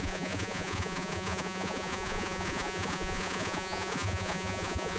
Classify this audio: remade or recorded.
remade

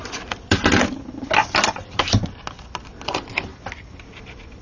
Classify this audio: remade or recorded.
recorded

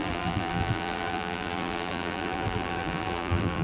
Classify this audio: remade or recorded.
remade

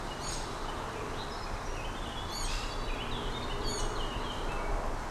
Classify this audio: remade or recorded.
recorded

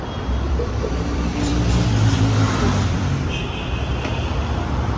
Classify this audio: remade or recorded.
remade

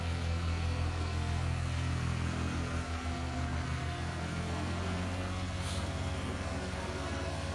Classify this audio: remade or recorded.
remade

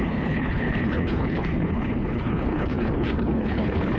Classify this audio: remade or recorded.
remade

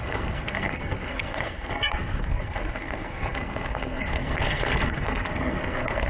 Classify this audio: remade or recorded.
remade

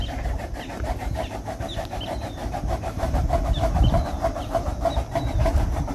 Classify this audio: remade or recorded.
remade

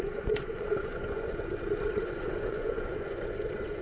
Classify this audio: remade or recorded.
remade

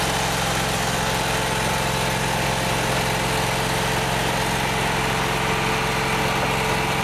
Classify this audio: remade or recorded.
recorded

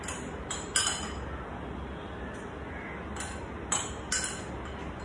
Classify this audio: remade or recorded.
recorded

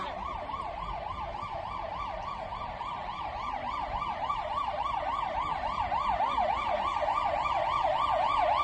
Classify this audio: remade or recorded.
recorded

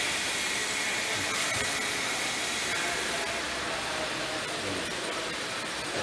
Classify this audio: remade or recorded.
recorded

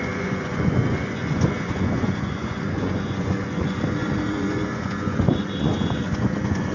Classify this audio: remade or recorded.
remade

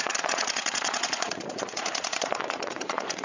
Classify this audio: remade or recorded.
remade